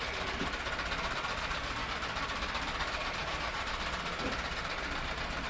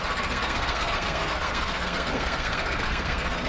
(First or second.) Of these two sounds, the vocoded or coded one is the second